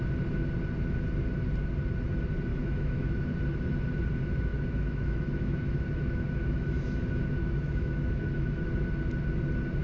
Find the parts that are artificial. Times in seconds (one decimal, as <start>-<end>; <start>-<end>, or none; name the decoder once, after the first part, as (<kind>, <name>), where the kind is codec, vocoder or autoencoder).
2.5-3.2 (autoencoder, DAC-VAE); 4.5-8.7